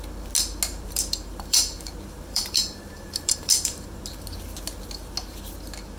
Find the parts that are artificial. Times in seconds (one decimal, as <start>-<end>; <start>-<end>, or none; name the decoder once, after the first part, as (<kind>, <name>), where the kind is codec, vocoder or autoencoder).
0.7-4.0 (vocoder, BigVGAN v2)